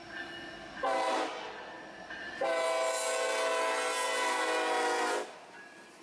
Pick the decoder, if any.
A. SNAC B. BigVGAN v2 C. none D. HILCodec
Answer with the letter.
C